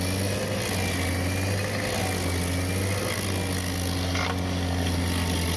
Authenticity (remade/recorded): recorded